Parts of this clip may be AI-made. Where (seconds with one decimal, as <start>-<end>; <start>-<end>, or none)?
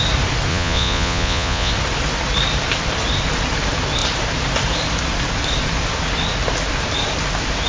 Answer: 0.5-1.7